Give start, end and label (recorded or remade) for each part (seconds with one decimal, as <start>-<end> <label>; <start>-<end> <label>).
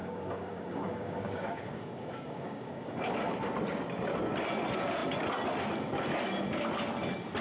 0.0-3.1 remade; 3.1-7.4 recorded